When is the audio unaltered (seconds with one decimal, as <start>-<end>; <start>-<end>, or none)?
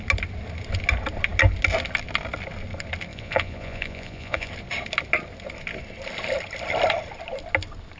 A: 0.0-3.1; 4.5-8.0